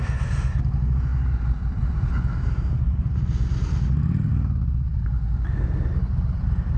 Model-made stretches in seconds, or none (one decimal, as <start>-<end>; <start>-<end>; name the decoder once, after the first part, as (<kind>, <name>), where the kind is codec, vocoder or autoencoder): none